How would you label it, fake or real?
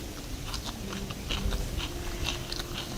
real